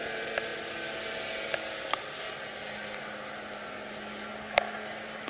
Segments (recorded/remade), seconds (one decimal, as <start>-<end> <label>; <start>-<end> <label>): 0.0-5.3 recorded